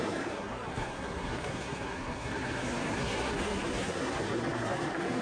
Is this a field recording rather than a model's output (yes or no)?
no